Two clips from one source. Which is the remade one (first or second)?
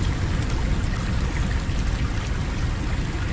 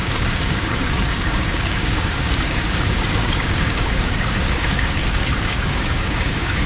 second